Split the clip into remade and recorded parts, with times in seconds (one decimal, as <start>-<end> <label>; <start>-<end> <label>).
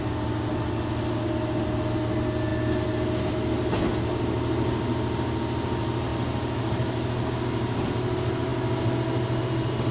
0.0-9.9 recorded